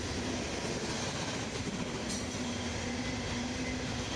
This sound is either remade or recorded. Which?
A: recorded